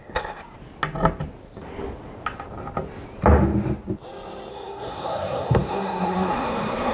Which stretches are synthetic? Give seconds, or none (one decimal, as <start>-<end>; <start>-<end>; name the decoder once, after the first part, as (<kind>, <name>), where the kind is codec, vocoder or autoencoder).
0.0-0.4 (codec, SNAC); 4.5-6.9

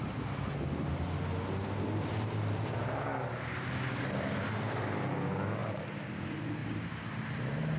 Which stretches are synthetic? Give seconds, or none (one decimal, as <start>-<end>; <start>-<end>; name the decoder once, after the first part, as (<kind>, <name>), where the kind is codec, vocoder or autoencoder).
6.6-7.8 (vocoder, BigVGAN v2)

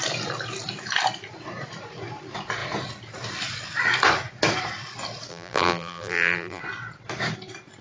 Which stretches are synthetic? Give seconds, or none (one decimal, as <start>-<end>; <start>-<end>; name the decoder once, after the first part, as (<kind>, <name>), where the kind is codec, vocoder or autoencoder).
5.3-6.6 (vocoder, BigVGAN v2)

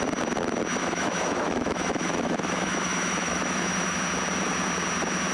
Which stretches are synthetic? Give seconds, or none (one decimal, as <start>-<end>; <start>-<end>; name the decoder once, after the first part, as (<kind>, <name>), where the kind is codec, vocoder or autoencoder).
0.8-4.0 (autoencoder, DAC-VAE)

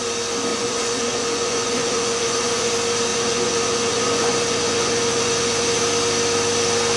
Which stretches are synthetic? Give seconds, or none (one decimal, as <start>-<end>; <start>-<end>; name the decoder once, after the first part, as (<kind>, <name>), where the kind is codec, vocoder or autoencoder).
0.5-2.7 (vocoder, Vocos); 3.1-5.8

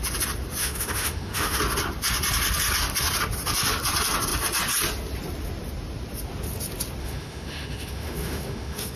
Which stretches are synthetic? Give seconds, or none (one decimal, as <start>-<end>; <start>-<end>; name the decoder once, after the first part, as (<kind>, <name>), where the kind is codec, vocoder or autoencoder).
0.6-1.6 (autoencoder, DAC-VAE); 7.0-9.0

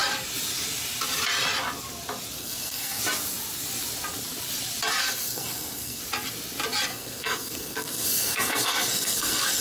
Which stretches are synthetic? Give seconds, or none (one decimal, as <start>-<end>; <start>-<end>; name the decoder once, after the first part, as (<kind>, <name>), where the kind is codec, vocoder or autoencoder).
2.4-3.0 (codec, SNAC); 5.0-6.0; 6.9-9.6

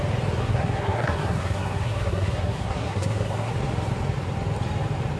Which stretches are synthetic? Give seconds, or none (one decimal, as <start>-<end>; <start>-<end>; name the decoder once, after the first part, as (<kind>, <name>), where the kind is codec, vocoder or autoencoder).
0.4-3.5 (codec, SNAC)